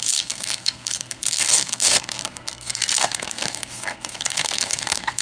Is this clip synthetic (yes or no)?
yes